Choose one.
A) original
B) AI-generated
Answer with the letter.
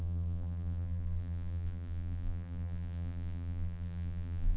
B